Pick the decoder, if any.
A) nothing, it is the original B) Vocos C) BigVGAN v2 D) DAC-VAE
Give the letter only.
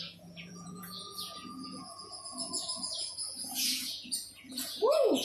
B